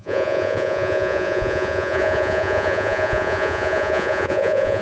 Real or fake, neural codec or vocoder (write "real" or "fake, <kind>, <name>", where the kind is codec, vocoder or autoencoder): fake, vocoder, Vocos